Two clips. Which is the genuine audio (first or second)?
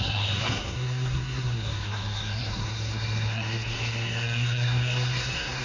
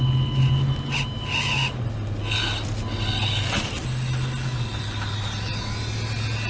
second